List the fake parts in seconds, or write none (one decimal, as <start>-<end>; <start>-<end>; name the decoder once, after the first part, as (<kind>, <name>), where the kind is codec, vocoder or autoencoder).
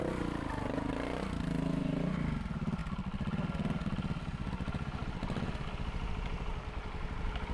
none